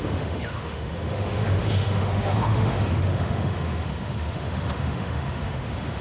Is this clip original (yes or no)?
no